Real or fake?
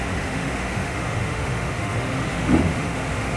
fake